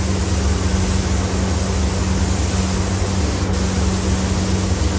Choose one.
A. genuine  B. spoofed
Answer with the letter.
A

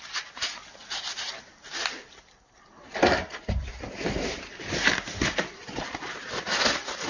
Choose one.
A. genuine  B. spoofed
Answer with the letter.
A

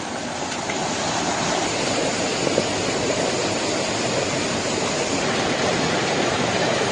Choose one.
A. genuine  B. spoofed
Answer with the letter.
B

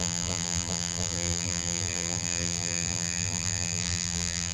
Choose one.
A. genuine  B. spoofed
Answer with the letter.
B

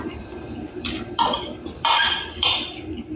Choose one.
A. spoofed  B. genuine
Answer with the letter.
A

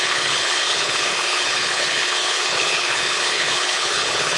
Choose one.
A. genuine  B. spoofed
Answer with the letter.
B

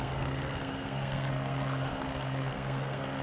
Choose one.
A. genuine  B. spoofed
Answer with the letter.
B